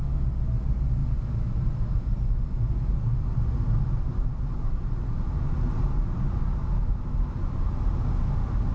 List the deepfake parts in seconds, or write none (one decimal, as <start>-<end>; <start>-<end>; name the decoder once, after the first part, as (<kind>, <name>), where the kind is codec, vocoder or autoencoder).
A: none

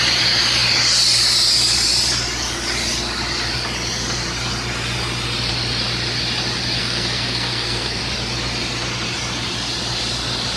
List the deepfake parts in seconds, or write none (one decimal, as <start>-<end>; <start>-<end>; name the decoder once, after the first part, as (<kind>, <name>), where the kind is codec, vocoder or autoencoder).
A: 6.8-8.0 (codec, SNAC)

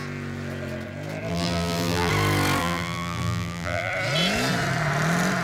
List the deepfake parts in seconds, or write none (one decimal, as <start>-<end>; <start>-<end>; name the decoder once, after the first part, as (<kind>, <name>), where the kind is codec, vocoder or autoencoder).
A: 1.3-2.1 (vocoder, BigVGAN v2); 2.6-3.9

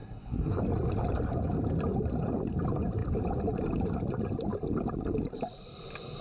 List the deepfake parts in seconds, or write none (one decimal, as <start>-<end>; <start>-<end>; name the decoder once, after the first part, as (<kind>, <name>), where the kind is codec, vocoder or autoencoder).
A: 0.0-0.6 (codec, SNAC)

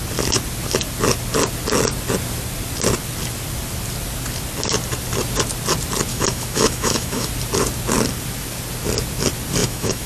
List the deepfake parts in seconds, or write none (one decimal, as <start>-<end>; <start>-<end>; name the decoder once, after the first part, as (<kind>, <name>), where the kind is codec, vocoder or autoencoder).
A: 6.1-7.3 (autoencoder, DAC-VAE); 9.6-10.1

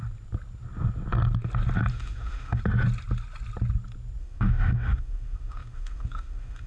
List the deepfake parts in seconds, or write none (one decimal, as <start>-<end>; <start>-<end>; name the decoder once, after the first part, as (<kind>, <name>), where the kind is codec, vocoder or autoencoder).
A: 1.9-2.6 (autoencoder, DAC-VAE); 4.2-6.7